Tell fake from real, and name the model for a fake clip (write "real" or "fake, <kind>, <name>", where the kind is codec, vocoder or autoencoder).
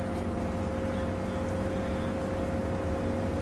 real